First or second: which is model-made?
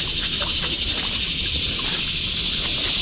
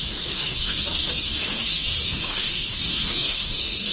second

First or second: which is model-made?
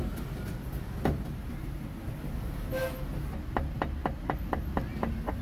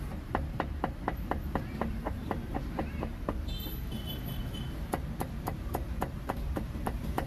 second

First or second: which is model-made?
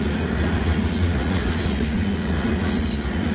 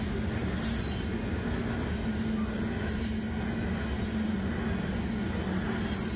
first